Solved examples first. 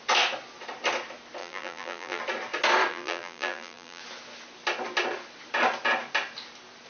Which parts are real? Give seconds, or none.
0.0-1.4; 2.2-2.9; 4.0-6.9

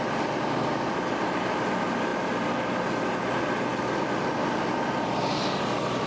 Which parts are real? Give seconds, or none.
0.0-6.1

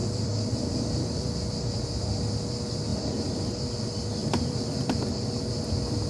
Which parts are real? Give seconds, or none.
2.1-2.9; 3.6-4.2; 5.2-6.1

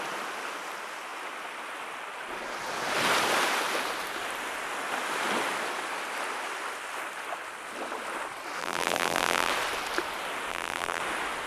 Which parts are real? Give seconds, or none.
0.0-8.6; 9.5-10.5; 11.0-11.5